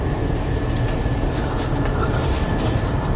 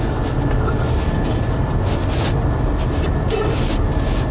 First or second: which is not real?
first